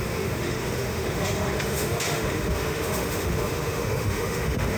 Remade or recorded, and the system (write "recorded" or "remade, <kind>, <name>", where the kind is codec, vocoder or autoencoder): remade, autoencoder, DAC-VAE